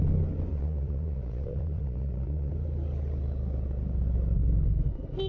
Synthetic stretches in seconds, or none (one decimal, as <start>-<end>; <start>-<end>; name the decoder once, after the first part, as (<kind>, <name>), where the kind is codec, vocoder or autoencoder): 0.5-2.5 (vocoder, Vocos)